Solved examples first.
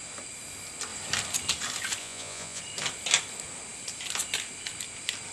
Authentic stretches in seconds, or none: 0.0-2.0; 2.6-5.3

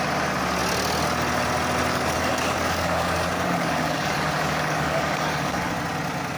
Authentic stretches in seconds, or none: 0.0-1.9; 5.7-6.4

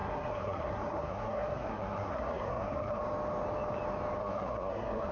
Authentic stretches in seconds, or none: 3.0-4.2

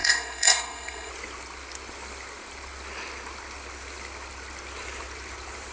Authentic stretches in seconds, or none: 1.1-5.7

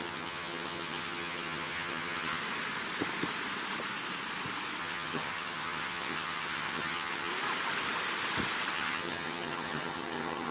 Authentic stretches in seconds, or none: 2.4-4.8; 7.3-8.7

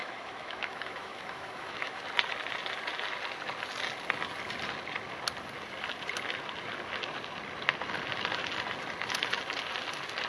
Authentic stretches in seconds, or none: 2.0-10.3

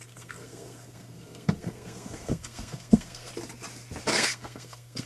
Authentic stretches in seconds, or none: 3.3-4.1

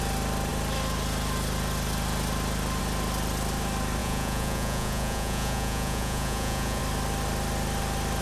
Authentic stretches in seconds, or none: 0.0-4.0; 6.8-8.2